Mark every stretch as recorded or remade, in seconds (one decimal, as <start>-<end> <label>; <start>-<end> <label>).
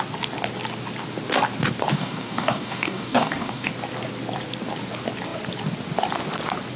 0.0-1.9 recorded; 1.9-3.7 remade; 3.7-6.8 recorded